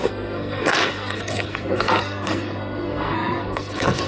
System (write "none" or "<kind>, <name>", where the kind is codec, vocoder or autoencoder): codec, SNAC